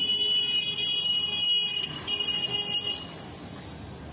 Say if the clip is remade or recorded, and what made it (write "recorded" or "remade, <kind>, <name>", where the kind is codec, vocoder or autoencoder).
recorded